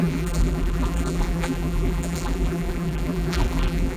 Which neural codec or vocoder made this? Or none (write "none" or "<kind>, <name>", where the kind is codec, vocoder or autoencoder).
vocoder, BigVGAN v2